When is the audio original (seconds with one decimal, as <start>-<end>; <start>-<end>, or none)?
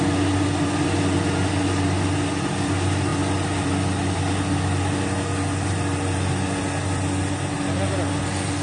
0.0-8.6